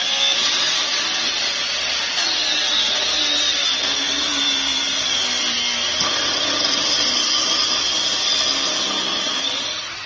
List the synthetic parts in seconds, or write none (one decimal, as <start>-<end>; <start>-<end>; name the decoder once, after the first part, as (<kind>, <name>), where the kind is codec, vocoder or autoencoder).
0.4-5.2 (vocoder, BigVGAN v2); 9.1-9.7